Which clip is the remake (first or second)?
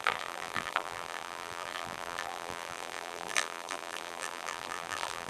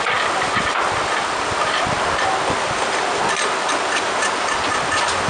first